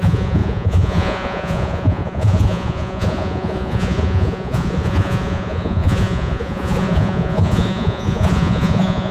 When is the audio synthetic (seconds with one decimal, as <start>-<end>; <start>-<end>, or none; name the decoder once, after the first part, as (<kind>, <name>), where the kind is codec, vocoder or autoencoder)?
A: 0.0-9.1 (vocoder, Vocos)